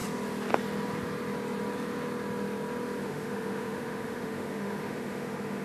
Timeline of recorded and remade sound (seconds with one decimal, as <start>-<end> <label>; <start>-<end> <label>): 0.0-3.0 recorded; 3.0-5.6 remade